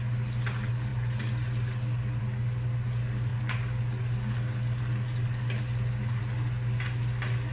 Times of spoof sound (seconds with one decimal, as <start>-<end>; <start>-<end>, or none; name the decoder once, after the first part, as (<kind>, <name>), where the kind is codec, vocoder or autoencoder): none